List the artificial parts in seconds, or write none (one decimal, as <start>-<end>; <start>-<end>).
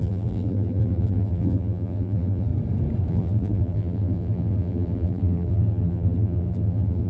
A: 0.0-2.5; 3.1-7.1